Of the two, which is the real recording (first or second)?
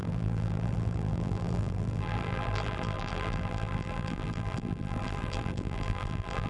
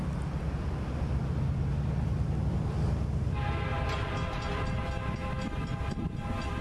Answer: second